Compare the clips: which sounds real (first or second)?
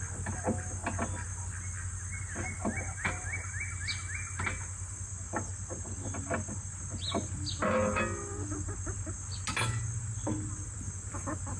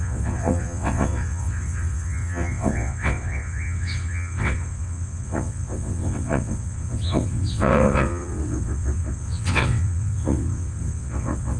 first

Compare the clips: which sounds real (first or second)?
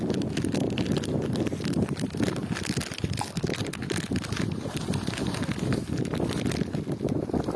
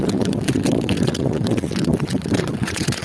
first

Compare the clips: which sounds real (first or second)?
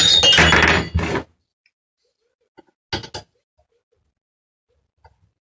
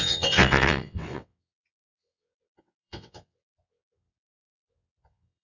first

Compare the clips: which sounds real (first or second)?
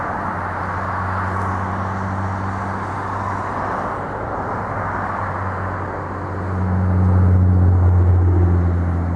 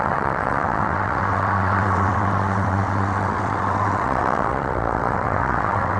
first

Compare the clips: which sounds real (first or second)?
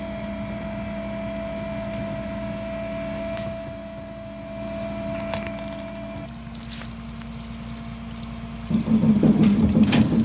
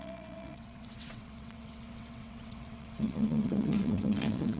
first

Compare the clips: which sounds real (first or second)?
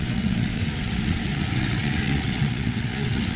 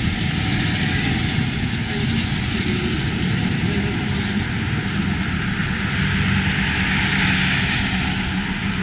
second